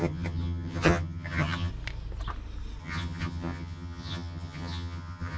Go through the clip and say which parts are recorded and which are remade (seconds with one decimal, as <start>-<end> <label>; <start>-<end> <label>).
0.0-1.7 remade; 1.7-2.8 recorded; 2.8-5.4 remade